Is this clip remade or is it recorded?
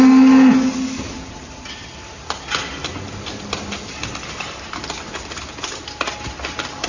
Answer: recorded